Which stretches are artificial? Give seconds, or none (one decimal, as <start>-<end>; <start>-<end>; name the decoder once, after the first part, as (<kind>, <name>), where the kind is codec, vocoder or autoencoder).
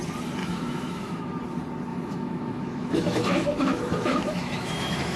0.4-1.3 (autoencoder, DAC-VAE); 1.9-5.2